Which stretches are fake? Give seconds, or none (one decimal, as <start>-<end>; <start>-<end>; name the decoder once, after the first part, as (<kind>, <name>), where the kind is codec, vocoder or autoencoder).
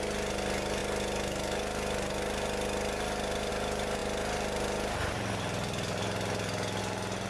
none